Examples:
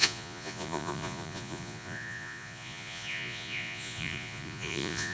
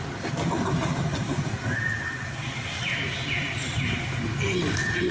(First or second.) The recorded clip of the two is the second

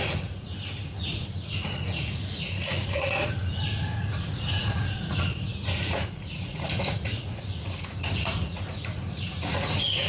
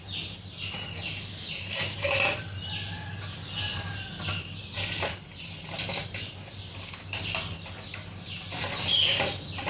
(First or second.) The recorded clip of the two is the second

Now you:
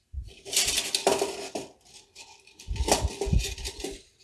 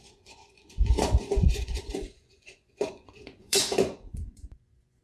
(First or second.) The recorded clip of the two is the first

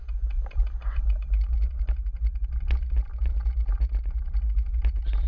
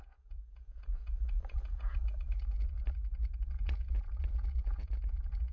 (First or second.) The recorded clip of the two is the first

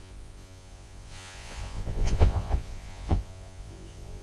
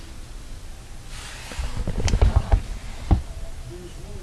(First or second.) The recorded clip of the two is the second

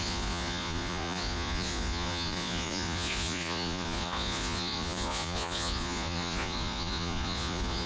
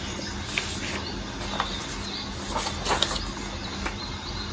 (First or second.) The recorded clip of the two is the second